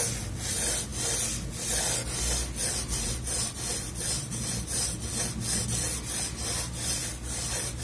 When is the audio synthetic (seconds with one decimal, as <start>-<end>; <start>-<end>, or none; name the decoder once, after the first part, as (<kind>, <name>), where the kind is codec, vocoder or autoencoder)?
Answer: none